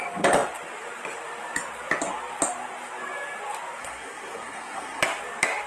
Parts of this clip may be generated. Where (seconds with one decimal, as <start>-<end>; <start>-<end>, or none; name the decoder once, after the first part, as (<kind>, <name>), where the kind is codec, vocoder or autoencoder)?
3.8-5.0 (codec, SNAC)